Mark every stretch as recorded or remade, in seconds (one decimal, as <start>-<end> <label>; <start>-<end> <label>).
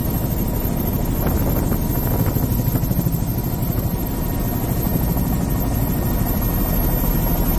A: 0.0-7.6 recorded